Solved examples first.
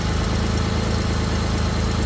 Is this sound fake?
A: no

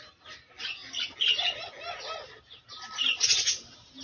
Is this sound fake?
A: no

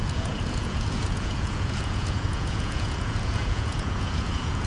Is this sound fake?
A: yes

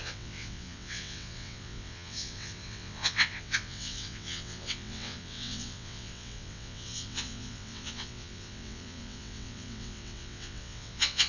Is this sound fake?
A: yes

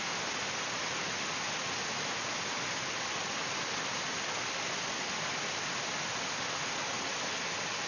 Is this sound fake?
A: no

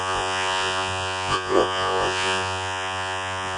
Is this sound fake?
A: yes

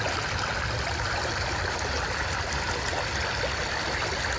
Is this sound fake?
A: no